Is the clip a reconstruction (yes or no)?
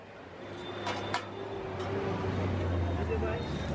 no